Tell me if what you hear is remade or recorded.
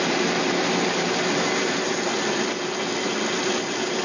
recorded